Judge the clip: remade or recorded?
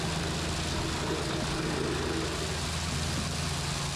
recorded